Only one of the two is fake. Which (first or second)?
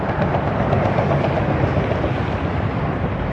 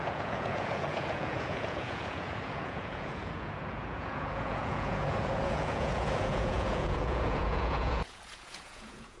second